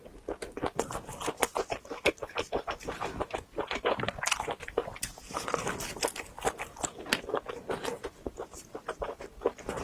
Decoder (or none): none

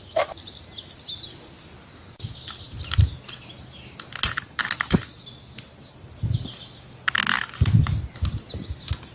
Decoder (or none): none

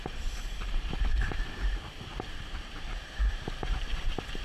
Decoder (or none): vocoder, BigVGAN v2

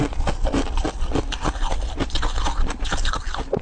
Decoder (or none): none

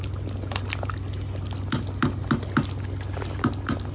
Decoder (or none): none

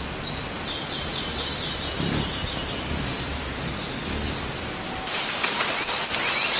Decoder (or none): none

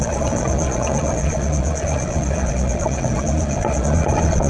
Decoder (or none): vocoder, Vocos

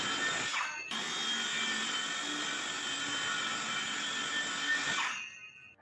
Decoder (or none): none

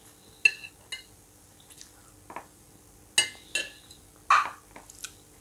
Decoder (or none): none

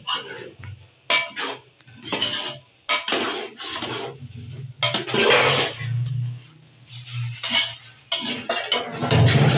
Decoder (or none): none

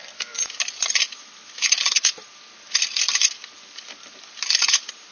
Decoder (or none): none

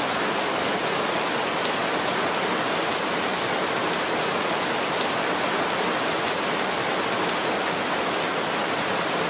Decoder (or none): none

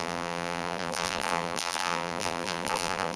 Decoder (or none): vocoder, BigVGAN v2